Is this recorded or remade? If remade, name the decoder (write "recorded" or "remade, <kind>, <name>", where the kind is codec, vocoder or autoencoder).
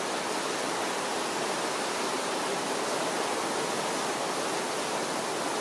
recorded